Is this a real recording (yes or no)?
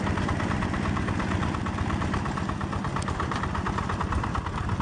yes